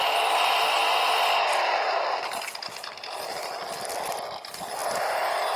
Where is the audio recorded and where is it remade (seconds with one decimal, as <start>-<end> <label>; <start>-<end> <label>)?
0.0-5.6 recorded

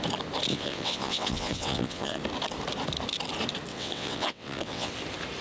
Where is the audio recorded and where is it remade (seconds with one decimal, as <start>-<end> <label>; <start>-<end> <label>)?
0.0-0.5 recorded; 0.5-2.2 remade; 2.2-3.7 recorded; 3.7-4.9 remade; 4.9-5.4 recorded

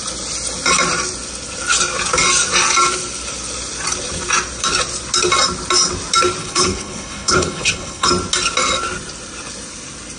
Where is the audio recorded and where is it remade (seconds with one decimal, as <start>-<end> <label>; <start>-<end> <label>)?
0.0-6.4 recorded; 6.4-8.1 remade; 8.1-10.2 recorded